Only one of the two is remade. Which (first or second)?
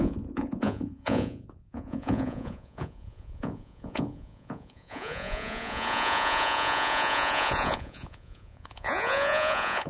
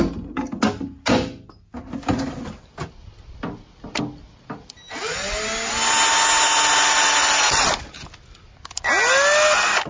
first